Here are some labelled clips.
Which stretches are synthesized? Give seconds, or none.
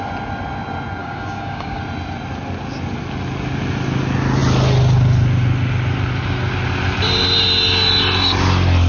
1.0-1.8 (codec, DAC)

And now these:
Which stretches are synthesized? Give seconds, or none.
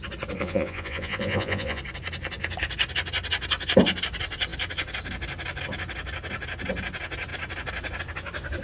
0.4-1.8 (vocoder, Vocos)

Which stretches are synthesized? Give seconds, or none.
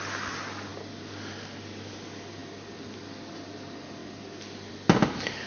none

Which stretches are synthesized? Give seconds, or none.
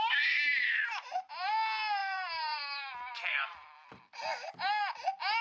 0.9-1.5 (vocoder, BigVGAN v2); 2.0-4.0